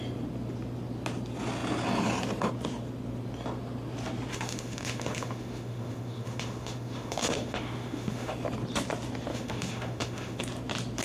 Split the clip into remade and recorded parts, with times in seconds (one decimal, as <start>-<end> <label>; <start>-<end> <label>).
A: 0.0-4.3 recorded; 4.3-8.3 remade; 8.3-9.3 recorded; 9.3-10.4 remade; 10.4-11.0 recorded